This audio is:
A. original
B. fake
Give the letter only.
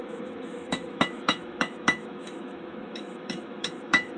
B